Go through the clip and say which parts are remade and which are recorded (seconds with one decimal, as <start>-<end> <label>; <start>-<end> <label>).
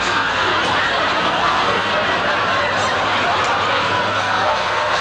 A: 0.0-0.5 remade; 0.5-1.2 recorded; 1.2-1.9 remade; 1.9-3.7 recorded; 3.7-5.0 remade